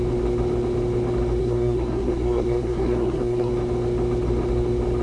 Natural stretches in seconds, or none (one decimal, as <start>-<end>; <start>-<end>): 0.0-1.4; 3.5-5.0